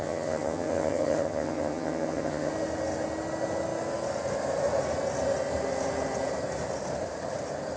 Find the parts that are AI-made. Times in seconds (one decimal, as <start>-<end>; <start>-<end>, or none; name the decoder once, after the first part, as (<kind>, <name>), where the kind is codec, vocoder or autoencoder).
0.0-2.5 (vocoder, HiFi-GAN)